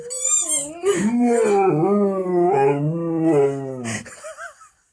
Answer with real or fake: real